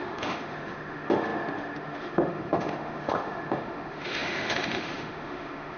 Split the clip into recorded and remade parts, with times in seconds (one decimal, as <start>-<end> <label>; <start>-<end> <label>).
0.0-5.8 remade